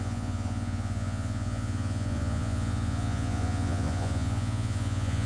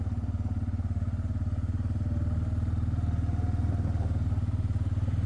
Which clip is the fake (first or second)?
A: first